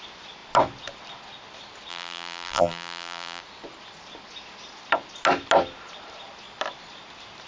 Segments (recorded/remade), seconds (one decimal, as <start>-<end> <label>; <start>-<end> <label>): 0.0-1.9 recorded; 1.9-3.4 remade; 3.4-7.5 recorded